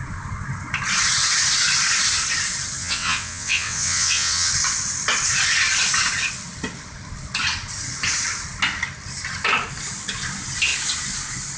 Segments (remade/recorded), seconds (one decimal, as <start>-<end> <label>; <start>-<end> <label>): 0.0-2.8 recorded; 2.8-4.5 remade; 4.5-11.6 recorded

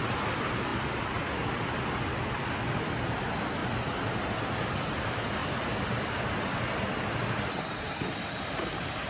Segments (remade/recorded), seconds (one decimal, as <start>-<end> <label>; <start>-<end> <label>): 0.0-9.1 recorded